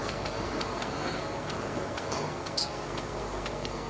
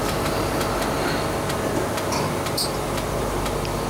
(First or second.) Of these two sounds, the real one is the second